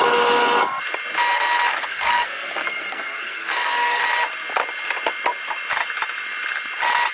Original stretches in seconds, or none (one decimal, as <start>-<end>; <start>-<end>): 0.0-1.7; 4.0-7.1